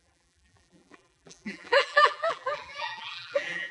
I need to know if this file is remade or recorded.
remade